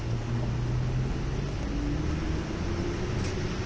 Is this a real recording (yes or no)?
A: yes